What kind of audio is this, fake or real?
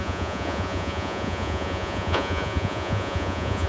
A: fake